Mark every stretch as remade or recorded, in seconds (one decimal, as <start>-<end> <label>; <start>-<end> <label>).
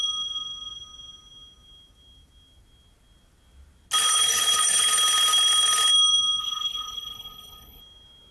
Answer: 0.0-4.0 recorded; 4.0-4.9 remade; 4.9-6.4 recorded; 6.4-7.8 remade; 7.8-8.3 recorded